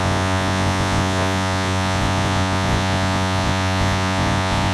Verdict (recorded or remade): remade